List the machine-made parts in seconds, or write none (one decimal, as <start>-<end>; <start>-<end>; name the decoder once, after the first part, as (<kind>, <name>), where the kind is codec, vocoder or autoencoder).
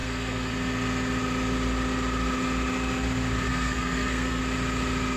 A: 0.0-0.5 (codec, SNAC); 3.5-4.4